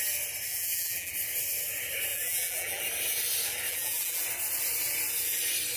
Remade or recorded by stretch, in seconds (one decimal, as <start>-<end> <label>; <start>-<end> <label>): 0.0-0.5 recorded; 0.5-1.1 remade; 1.1-2.1 recorded; 2.1-2.8 remade; 2.8-3.7 recorded; 3.7-4.2 remade; 4.2-5.8 recorded